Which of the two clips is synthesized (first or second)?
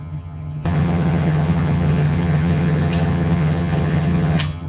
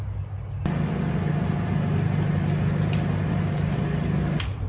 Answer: first